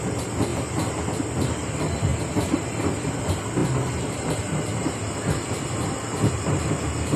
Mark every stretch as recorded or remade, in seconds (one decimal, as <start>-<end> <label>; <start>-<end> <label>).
0.0-2.1 recorded; 2.1-3.2 remade; 3.2-7.2 recorded